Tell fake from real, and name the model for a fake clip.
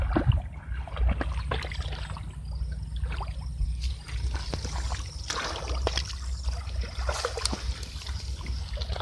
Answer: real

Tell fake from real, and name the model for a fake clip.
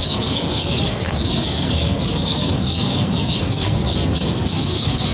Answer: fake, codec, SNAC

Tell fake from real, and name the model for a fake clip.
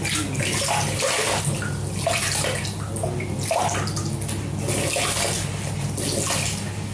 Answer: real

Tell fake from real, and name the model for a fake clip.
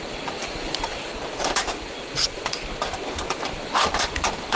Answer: real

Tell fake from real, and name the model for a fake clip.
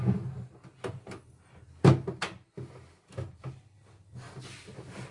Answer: real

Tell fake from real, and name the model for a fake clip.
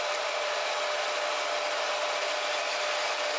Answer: real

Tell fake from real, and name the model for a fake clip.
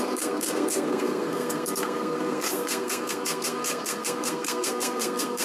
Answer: fake, codec, SNAC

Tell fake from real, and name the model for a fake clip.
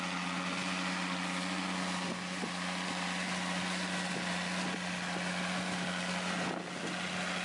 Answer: real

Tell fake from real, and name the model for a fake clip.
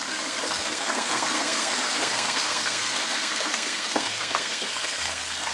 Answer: fake, codec, SNAC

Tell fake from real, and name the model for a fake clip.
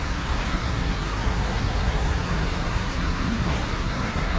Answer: fake, codec, SNAC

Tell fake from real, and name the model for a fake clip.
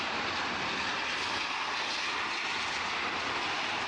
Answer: real